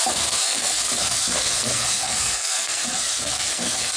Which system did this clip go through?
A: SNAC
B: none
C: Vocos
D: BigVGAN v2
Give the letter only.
A